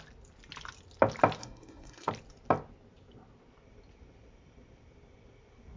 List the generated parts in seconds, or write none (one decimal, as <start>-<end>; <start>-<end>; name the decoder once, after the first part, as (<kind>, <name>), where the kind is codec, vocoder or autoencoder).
1.4-2.1 (codec, SNAC)